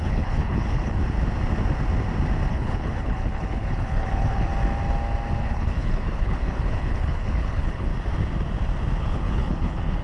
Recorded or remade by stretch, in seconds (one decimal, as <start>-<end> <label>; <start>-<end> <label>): 0.0-1.0 remade; 1.0-2.5 recorded; 2.5-4.5 remade; 4.5-5.4 recorded; 5.4-7.9 remade; 7.9-9.0 recorded; 9.0-10.0 remade